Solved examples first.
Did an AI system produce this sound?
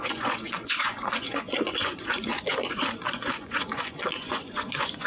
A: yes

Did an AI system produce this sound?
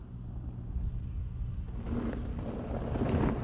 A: no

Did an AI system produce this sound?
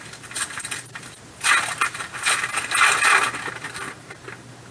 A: no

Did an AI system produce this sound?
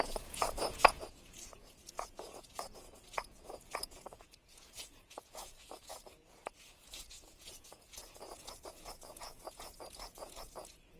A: yes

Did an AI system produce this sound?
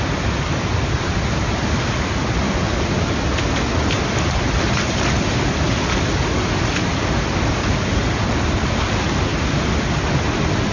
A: no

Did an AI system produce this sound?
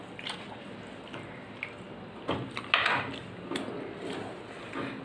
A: no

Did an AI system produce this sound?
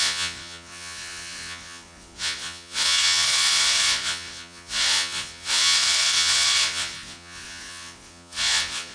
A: yes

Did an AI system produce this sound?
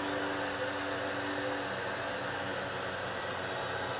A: no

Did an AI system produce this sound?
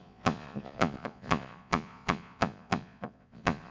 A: yes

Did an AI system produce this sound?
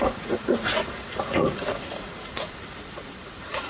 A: yes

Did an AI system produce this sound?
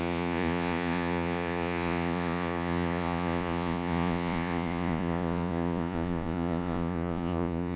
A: yes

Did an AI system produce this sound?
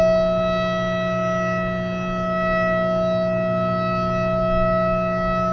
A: no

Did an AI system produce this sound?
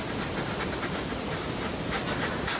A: no